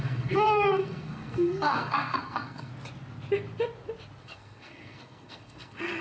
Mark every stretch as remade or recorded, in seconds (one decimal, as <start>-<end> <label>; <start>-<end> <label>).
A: 0.0-2.7 remade; 2.7-4.2 recorded; 4.2-6.0 remade